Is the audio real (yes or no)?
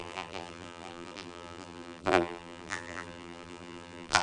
no